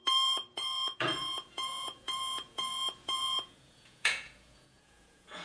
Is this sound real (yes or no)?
no